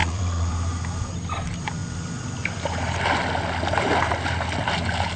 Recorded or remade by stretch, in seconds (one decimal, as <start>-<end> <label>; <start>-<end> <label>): 0.0-0.5 remade; 0.5-5.2 recorded